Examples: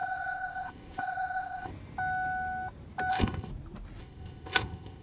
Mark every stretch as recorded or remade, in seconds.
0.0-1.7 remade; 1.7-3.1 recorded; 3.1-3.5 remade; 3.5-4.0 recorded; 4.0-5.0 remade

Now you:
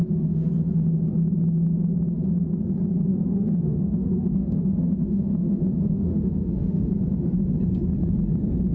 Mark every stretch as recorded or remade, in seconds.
0.0-0.5 remade; 0.5-3.1 recorded; 3.1-6.9 remade; 6.9-8.7 recorded

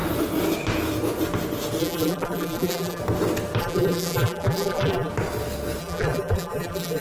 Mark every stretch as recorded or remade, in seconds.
0.0-1.8 recorded; 1.8-3.0 remade; 3.0-3.6 recorded; 3.6-5.1 remade; 5.1-5.8 recorded; 5.8-7.0 remade

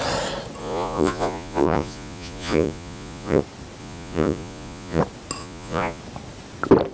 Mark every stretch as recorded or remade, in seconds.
0.0-0.6 recorded; 0.6-3.4 remade; 3.4-3.8 recorded; 3.8-5.0 remade; 5.0-5.4 recorded; 5.4-6.0 remade; 6.0-6.9 recorded

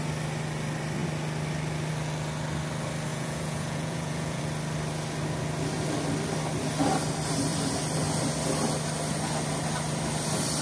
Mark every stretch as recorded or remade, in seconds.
0.0-3.1 recorded; 3.1-4.4 remade; 4.4-10.6 recorded